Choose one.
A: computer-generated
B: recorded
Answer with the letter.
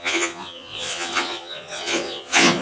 A